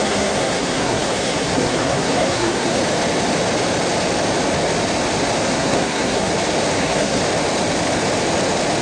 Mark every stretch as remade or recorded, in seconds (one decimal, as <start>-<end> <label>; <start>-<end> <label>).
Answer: 0.0-2.8 remade; 2.8-5.5 recorded; 5.5-6.3 remade; 6.3-6.8 recorded; 6.8-7.2 remade; 7.2-8.8 recorded